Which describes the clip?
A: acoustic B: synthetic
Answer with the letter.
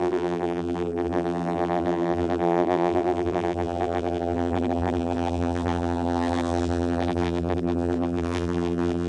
B